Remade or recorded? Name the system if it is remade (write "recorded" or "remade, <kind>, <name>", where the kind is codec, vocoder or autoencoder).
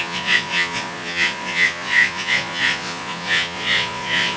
remade, vocoder, Vocos